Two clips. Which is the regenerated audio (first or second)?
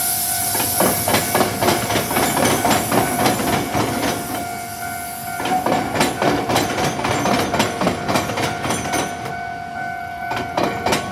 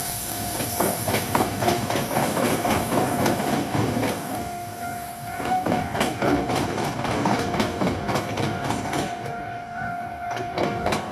second